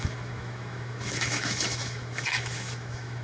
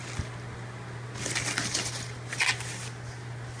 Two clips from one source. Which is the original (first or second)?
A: second